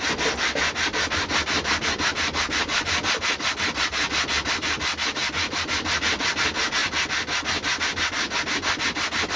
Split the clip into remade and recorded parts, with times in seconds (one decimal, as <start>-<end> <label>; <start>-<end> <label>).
0.0-9.4 recorded